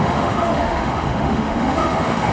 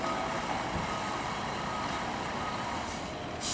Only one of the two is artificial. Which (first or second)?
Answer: first